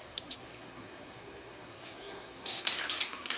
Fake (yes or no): yes